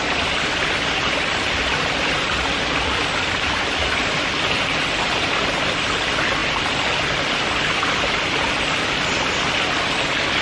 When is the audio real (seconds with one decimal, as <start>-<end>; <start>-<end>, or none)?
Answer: 0.0-10.4